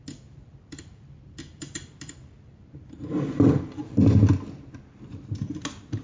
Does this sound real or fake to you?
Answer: real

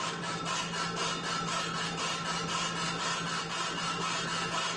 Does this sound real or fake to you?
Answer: real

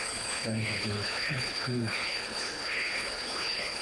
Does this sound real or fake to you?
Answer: fake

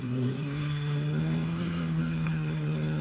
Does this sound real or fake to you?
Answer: fake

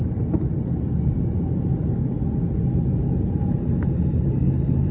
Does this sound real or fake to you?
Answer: real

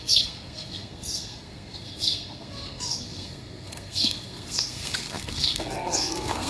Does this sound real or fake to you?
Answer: fake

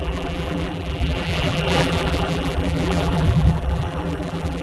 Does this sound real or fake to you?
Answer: fake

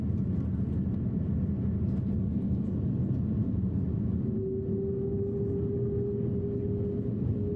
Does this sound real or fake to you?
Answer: real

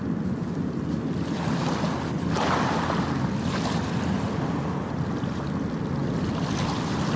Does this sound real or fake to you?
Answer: real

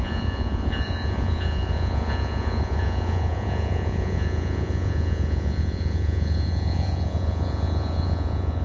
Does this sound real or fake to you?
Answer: fake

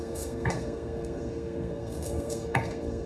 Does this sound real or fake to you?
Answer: fake